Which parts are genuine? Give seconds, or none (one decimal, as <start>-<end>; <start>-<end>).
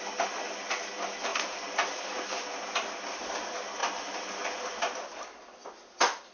0.0-1.3; 2.6-3.8; 4.7-6.3